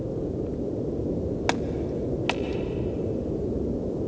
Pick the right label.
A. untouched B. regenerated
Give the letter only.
A